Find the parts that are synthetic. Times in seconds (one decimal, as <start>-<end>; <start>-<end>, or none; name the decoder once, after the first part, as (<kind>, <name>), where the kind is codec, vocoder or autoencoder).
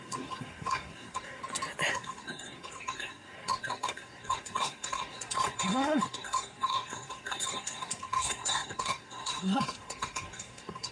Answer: 0.0-1.4 (codec, SNAC); 1.9-10.9